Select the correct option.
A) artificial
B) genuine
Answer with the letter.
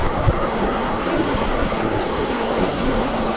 A